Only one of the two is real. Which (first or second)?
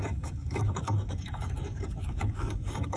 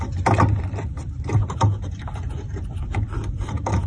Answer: second